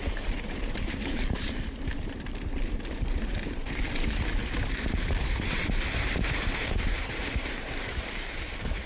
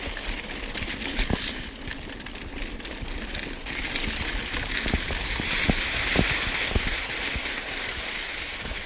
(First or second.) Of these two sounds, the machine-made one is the first